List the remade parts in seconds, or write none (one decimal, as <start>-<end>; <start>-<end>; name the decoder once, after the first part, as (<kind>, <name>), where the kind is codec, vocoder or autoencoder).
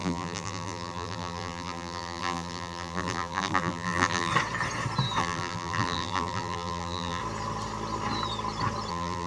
0.0-4.3 (vocoder, BigVGAN v2); 5.2-7.2; 8.9-9.3